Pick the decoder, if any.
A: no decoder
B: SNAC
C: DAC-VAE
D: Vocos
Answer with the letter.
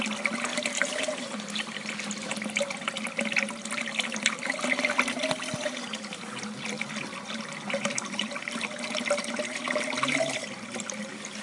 A